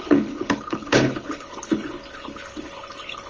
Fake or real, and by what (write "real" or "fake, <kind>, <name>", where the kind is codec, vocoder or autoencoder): fake, codec, HILCodec